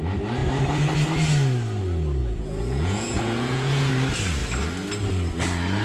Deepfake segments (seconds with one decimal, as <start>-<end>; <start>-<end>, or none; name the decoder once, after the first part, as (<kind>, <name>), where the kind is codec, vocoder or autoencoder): 2.2-3.9 (vocoder, Vocos)